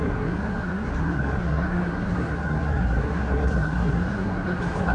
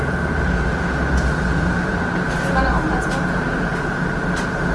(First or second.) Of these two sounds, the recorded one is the second